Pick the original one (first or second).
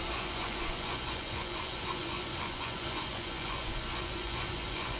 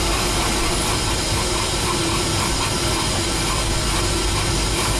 second